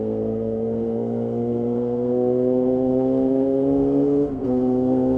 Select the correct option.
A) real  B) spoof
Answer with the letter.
B